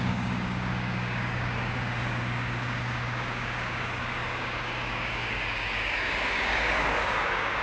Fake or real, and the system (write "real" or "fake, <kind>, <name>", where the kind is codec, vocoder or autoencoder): fake, codec, DAC